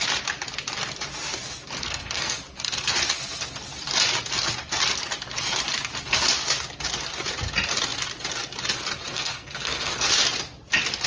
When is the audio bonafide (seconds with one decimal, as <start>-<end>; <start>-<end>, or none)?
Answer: 0.0-1.8; 2.4-9.1; 10.1-11.1